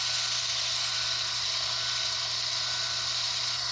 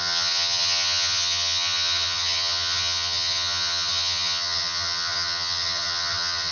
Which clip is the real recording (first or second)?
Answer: first